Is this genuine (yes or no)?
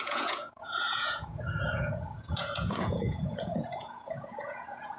no